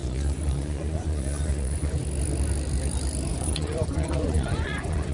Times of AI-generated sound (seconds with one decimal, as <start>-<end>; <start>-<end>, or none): 0.0-2.0; 3.3-5.1